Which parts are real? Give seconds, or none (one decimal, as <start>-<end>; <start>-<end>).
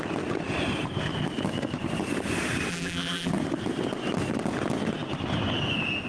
0.0-2.7; 3.3-6.1